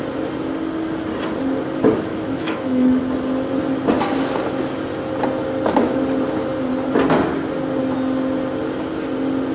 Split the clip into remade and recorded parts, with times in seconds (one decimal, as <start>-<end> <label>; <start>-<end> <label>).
0.0-2.1 recorded; 2.1-3.0 remade; 3.0-9.5 recorded